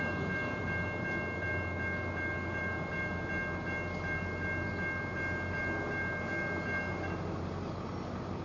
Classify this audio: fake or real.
real